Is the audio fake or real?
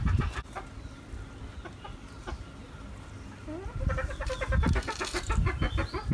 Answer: real